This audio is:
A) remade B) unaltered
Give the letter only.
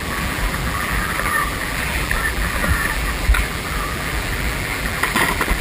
A